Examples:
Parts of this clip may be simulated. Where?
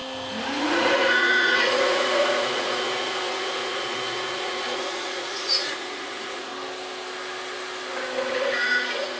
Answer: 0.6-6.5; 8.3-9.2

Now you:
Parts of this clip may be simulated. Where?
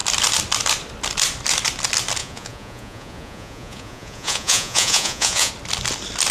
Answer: 2.2-5.5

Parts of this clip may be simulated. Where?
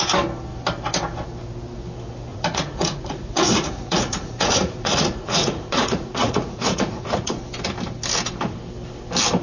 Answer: 2.3-7.4